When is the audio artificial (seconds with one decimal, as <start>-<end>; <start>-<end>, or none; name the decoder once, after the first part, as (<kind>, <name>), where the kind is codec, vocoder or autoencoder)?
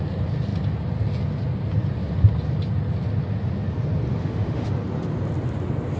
4.2-4.7 (autoencoder, DAC-VAE)